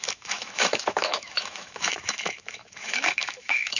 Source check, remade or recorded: remade